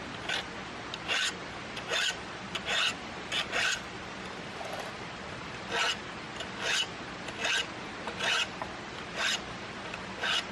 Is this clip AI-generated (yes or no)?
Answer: no